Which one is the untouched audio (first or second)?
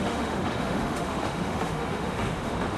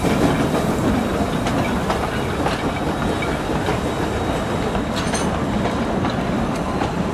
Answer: second